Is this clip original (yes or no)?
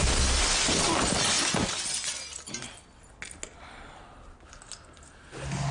yes